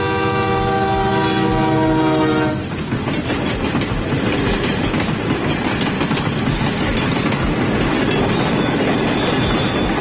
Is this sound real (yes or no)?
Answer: yes